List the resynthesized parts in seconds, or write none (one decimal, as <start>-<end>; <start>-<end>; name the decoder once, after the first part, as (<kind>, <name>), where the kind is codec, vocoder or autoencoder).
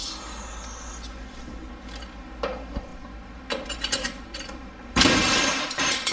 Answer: 2.9-6.1 (vocoder, BigVGAN v2)